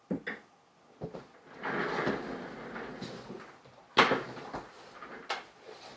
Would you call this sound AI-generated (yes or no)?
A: no